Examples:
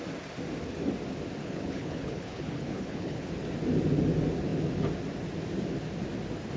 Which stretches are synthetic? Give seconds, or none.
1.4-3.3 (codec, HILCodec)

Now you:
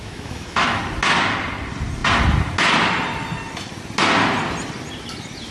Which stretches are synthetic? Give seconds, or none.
0.0-0.8 (autoencoder, DAC-VAE)

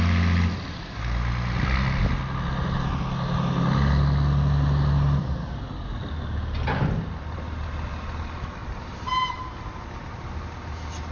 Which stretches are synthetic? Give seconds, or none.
none

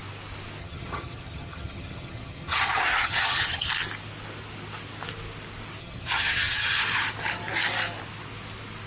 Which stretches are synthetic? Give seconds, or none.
0.6-3.7 (vocoder, HiFi-GAN); 5.8-6.8

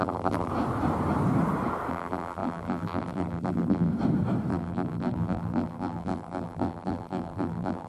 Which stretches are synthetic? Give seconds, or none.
0.0-0.5 (vocoder, BigVGAN v2); 1.9-3.9; 4.5-7.9

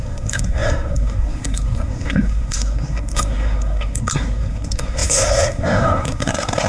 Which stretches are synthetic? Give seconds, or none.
0.0-6.7 (codec, SNAC)

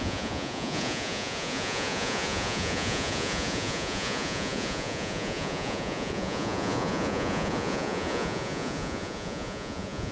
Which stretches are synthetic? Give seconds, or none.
0.0-10.1 (vocoder, Vocos)